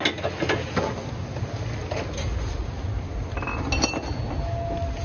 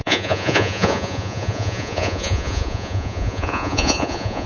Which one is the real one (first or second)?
first